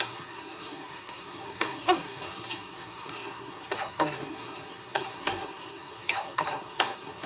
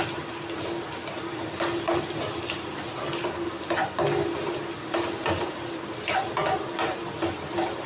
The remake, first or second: first